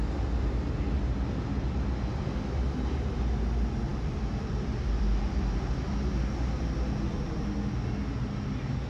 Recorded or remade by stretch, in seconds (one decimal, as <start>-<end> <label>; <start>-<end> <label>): 0.0-3.9 recorded; 3.9-5.9 remade; 5.9-8.9 recorded